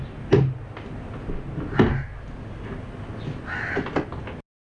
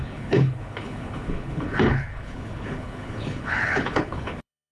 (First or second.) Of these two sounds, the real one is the first